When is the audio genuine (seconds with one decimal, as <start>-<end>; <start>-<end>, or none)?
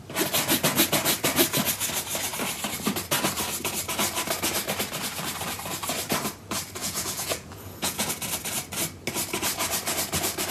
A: 0.0-6.8; 8.1-10.5